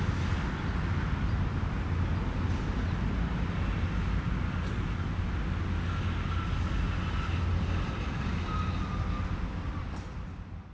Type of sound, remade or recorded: recorded